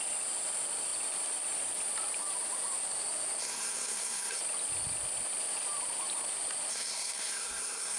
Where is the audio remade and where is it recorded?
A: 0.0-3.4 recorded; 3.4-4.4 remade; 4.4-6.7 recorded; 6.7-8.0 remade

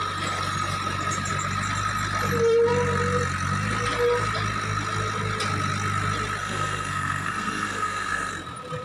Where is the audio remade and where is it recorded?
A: 0.0-6.4 recorded; 6.4-8.3 remade; 8.3-8.8 recorded

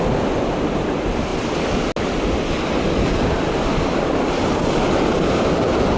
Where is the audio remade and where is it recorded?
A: 0.0-6.0 recorded

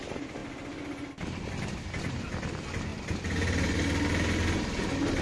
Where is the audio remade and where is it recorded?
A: 0.0-5.2 recorded